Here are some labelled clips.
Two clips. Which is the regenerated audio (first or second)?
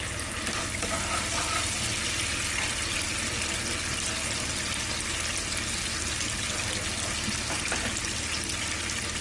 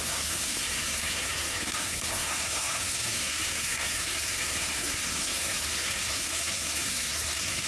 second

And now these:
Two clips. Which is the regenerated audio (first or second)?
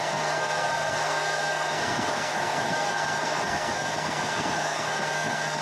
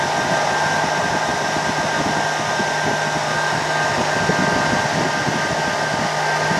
first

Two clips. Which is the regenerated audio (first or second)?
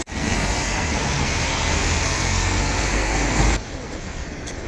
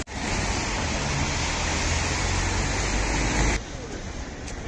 first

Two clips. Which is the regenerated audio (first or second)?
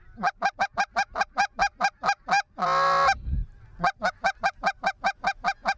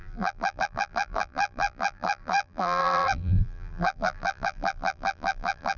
second